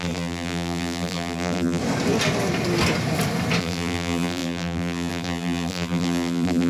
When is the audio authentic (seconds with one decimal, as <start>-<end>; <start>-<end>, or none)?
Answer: 1.8-3.6

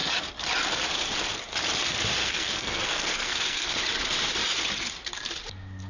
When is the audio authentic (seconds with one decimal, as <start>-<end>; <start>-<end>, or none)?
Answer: 0.0-2.2; 3.8-5.9